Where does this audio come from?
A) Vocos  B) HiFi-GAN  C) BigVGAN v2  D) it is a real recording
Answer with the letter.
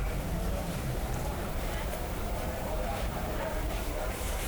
C